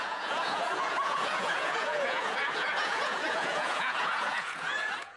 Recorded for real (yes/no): no